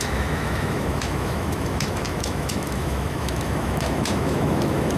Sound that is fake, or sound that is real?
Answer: fake